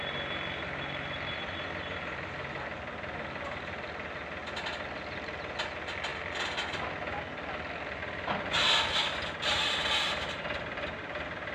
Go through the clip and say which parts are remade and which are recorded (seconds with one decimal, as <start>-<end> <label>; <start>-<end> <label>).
0.0-11.5 recorded